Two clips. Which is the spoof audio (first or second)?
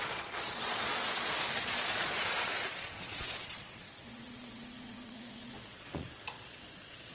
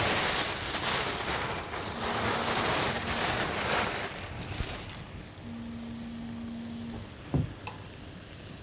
first